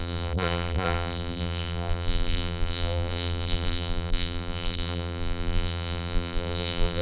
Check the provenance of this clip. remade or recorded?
remade